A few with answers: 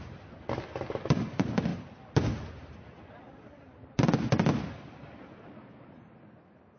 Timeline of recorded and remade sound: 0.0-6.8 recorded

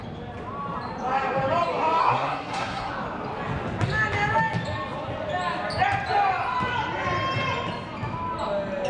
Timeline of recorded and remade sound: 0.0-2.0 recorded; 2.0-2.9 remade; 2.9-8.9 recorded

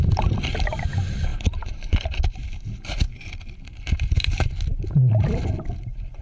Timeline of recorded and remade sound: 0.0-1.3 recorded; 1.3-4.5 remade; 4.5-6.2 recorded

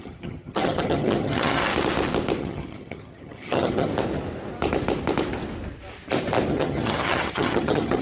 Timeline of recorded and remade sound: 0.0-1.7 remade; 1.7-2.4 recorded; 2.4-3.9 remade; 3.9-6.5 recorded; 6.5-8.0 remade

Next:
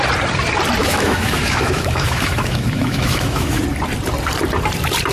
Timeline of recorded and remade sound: 0.0-0.8 recorded; 0.8-3.6 remade; 3.6-5.1 recorded